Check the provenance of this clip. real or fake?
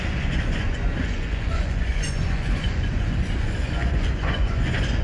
fake